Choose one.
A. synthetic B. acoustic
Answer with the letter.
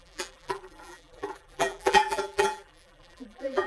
A